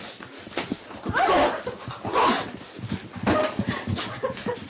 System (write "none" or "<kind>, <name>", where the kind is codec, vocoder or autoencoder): none